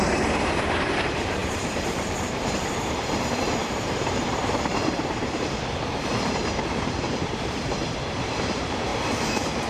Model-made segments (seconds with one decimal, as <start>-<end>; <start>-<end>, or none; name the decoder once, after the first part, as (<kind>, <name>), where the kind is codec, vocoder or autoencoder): 0.0-8.9 (vocoder, BigVGAN v2)